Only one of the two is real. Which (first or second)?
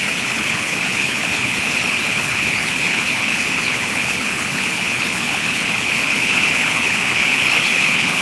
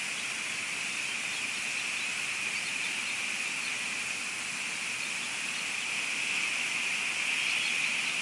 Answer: second